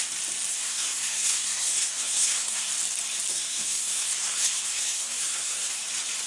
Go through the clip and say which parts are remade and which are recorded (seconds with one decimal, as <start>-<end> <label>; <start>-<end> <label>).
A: 0.0-0.5 recorded; 0.5-2.7 remade; 2.7-3.3 recorded; 3.3-5.8 remade; 5.8-6.3 recorded